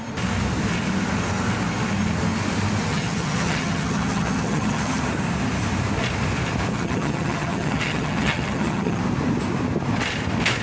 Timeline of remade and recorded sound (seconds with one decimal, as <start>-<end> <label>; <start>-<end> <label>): 0.0-2.9 recorded; 2.9-5.0 remade; 5.0-6.7 recorded; 6.7-9.0 remade; 9.0-10.6 recorded